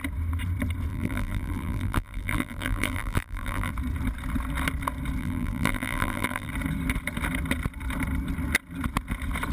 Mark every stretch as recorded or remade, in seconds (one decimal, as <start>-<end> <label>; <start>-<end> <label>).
0.0-0.9 recorded; 0.9-3.7 remade; 3.7-5.2 recorded; 5.2-6.5 remade; 6.5-9.5 recorded